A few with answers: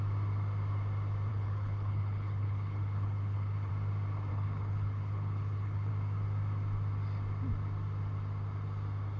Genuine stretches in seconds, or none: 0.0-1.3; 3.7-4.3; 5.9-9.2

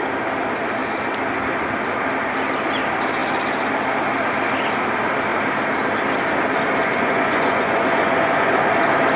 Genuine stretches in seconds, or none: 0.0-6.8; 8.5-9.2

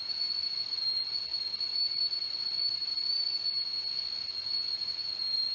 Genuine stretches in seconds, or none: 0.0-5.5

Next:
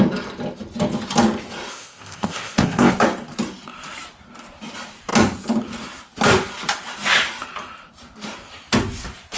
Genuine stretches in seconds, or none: 0.0-1.7; 2.9-9.4

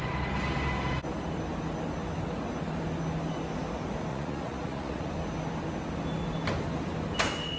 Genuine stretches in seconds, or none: 0.0-4.1; 5.1-7.6